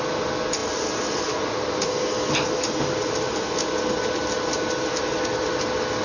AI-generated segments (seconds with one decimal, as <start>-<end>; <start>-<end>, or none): none